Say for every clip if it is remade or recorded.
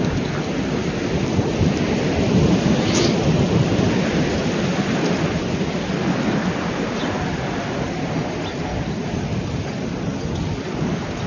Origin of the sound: recorded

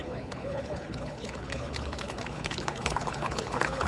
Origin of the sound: remade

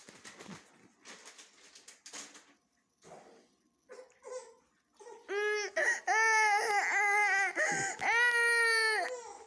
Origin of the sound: recorded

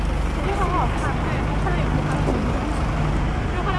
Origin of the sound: recorded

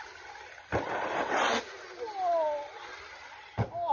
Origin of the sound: recorded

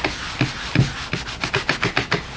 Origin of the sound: recorded